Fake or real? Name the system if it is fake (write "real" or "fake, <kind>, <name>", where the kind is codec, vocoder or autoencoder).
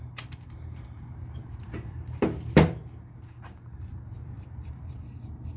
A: fake, vocoder, BigVGAN v2